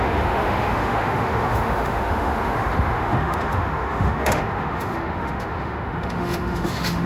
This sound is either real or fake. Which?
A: fake